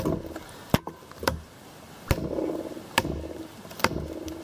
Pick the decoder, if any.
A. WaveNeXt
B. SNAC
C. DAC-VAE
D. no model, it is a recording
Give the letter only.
D